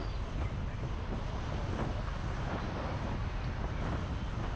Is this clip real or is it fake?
real